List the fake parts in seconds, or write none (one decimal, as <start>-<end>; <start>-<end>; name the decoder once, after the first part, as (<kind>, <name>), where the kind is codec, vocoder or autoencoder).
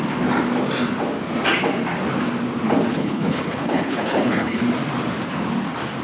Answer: 2.9-4.6 (codec, HILCodec)